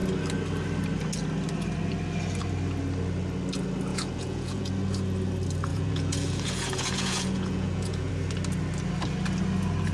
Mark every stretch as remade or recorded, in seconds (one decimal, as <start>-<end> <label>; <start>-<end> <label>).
0.0-3.9 recorded; 3.9-4.7 remade; 4.7-5.7 recorded; 5.7-8.1 remade; 8.1-9.9 recorded